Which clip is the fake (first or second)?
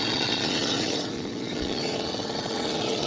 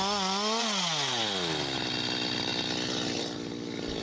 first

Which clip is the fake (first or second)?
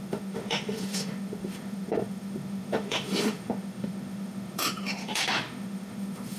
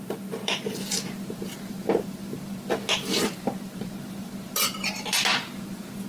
first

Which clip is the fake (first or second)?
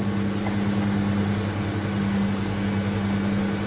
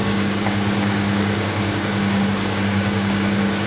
second